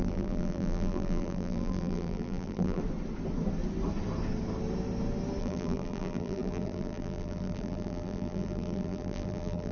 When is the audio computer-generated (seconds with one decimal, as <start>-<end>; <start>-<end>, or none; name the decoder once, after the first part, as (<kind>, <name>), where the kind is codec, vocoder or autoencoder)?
0.0-2.8 (vocoder, BigVGAN v2); 5.4-9.7